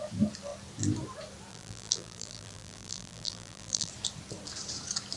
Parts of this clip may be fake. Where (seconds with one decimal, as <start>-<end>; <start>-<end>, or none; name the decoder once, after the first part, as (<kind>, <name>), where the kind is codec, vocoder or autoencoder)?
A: 1.5-3.9 (vocoder, BigVGAN v2)